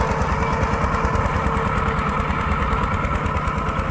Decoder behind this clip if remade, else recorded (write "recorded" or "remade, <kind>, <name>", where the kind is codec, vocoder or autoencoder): recorded